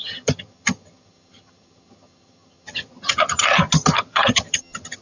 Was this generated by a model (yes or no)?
yes